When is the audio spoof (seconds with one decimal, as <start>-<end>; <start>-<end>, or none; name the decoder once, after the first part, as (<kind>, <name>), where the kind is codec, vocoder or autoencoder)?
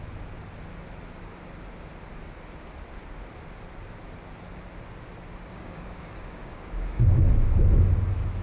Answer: 5.5-7.2 (codec, DAC)